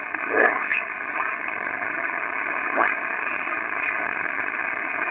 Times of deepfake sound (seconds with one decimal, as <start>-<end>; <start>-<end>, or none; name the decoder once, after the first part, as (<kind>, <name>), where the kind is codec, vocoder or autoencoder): 0.0-5.1 (vocoder, HiFi-GAN)